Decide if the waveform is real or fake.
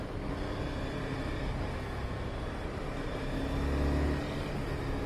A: real